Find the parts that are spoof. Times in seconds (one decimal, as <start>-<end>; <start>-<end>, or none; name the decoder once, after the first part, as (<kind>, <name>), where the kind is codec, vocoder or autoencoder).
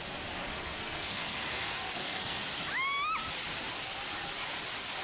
0.4-2.4 (codec, SNAC)